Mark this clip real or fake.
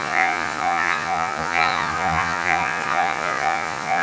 fake